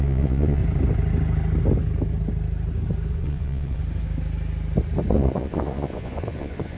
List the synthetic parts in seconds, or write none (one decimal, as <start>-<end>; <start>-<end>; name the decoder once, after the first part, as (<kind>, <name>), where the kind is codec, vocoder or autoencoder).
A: 0.0-0.6 (vocoder, Vocos); 3.1-3.8; 5.1-6.8